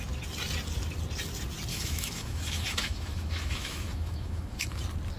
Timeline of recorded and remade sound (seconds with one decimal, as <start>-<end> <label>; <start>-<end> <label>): 0.0-1.7 recorded; 1.7-4.8 remade; 4.8-5.2 recorded